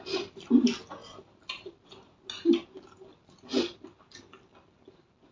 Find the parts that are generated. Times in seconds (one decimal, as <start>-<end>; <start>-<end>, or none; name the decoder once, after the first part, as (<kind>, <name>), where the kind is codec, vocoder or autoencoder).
none